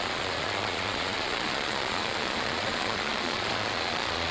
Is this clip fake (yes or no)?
yes